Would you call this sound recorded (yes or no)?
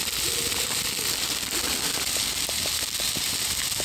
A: no